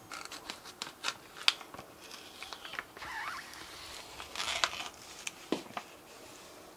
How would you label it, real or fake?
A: real